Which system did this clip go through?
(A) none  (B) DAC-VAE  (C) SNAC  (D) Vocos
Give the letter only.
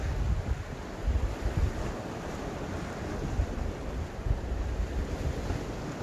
A